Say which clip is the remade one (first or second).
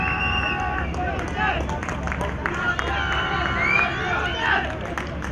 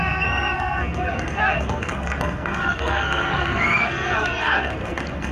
second